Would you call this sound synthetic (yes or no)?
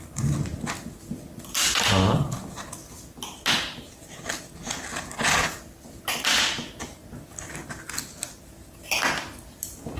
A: no